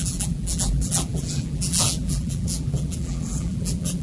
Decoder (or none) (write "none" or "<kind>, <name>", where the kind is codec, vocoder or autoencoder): vocoder, BigVGAN v2